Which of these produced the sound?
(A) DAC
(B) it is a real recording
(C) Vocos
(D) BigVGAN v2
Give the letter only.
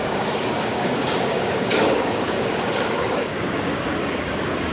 A